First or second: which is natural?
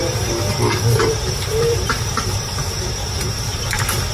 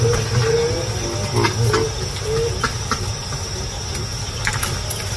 second